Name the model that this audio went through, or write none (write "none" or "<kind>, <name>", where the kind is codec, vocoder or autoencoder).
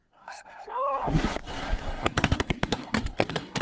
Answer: codec, SNAC